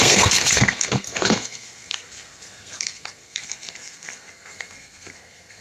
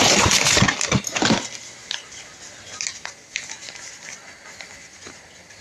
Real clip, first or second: second